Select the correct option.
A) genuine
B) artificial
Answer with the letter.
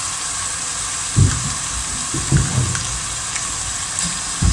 A